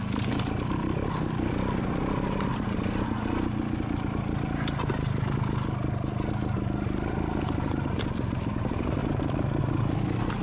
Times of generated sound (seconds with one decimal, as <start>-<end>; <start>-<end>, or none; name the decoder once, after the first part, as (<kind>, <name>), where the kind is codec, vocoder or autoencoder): none